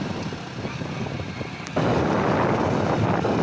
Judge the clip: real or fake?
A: real